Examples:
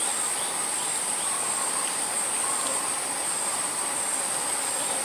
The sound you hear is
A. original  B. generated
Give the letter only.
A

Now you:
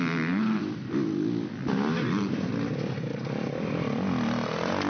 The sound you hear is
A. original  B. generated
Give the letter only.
A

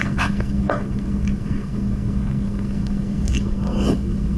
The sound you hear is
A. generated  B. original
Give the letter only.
A